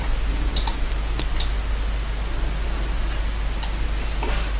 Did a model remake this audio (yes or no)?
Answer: no